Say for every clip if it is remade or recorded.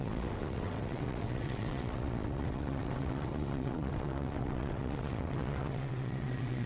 remade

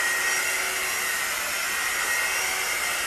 recorded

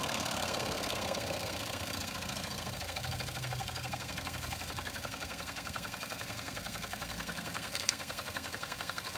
remade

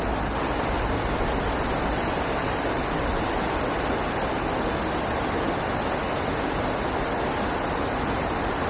recorded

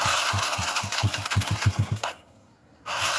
remade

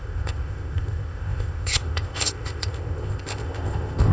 remade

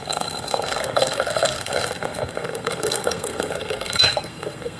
remade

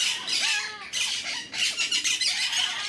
recorded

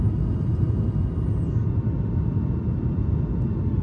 recorded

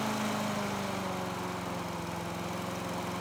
recorded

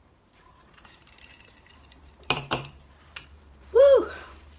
remade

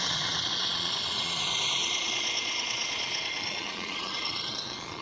remade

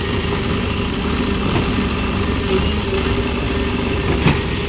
recorded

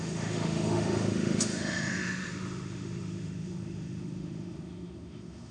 remade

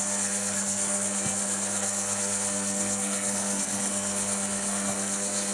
remade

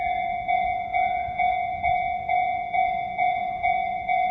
remade